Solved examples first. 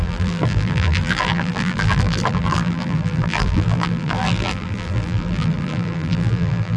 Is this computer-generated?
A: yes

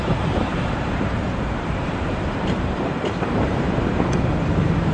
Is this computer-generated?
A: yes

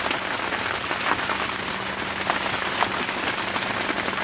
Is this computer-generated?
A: no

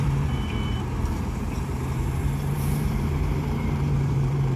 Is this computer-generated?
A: yes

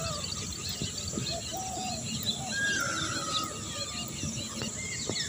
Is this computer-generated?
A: no